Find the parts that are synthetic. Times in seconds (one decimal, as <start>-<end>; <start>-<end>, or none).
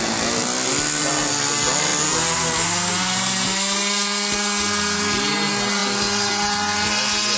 none